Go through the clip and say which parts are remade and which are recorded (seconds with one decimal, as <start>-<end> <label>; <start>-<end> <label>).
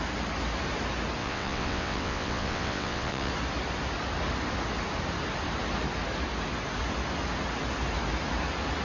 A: 0.0-1.2 recorded; 1.2-3.3 remade; 3.3-8.8 recorded